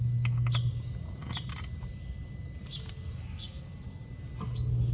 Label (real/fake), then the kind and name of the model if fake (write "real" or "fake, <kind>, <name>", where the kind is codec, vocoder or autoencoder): real